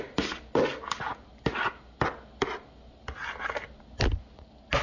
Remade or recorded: recorded